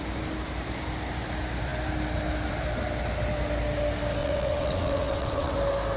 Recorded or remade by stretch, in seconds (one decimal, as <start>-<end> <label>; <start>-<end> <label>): 0.0-4.2 recorded; 4.2-5.5 remade; 5.5-6.0 recorded